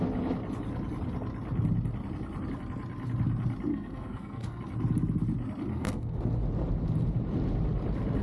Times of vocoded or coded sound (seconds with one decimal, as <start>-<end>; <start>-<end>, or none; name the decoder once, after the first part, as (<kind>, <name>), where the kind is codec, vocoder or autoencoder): 3.7-4.6 (codec, SNAC); 5.7-6.2